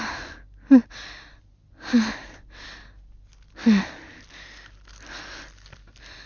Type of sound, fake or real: real